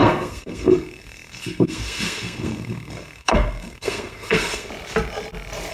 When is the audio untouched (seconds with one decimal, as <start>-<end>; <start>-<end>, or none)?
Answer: 4.7-5.7